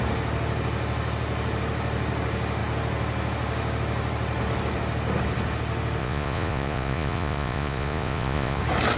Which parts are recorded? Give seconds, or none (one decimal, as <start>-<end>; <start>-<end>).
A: 0.0-6.0; 8.6-9.0